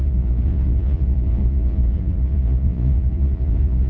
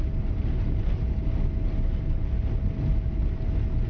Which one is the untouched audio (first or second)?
second